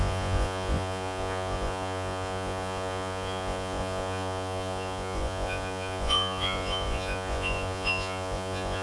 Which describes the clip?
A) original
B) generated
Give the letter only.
B